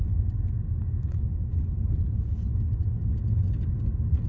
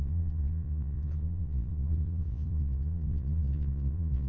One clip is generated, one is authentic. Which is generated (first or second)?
second